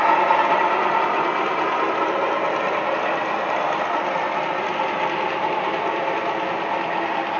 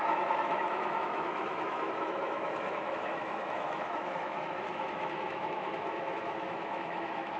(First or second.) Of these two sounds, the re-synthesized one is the second